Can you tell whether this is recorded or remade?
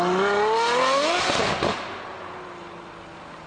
recorded